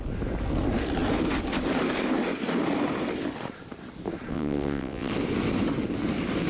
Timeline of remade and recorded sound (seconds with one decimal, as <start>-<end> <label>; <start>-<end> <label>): 0.0-4.3 recorded; 4.3-5.1 remade; 5.1-6.5 recorded